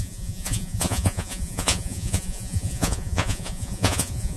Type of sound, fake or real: fake